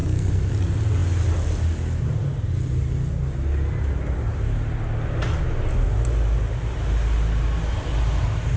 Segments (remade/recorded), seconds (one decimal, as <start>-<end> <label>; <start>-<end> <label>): 0.0-0.5 remade; 0.5-8.6 recorded